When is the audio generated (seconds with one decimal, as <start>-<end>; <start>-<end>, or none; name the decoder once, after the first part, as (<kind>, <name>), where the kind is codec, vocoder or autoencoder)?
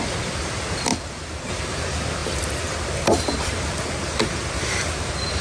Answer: none